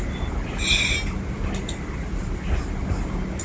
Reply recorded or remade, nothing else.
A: recorded